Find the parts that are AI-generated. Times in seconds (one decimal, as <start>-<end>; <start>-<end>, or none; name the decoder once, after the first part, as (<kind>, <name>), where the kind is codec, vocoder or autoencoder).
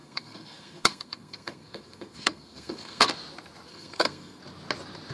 0.0-3.1 (codec, SNAC); 3.7-4.4